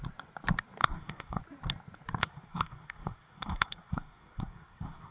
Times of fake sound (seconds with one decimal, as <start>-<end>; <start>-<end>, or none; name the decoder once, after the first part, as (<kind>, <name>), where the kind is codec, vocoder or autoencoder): 0.8-1.4 (codec, SNAC); 2.2-5.1